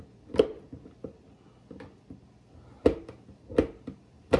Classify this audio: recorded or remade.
recorded